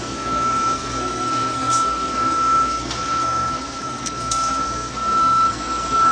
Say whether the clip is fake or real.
fake